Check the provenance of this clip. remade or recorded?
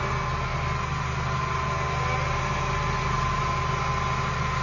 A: recorded